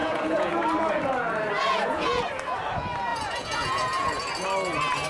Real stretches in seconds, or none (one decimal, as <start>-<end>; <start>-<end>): 0.5-1.7; 2.3-3.1; 4.1-5.1